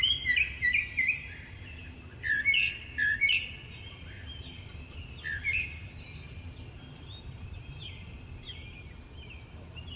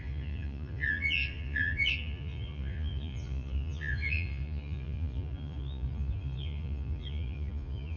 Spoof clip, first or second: second